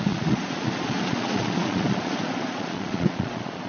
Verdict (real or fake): fake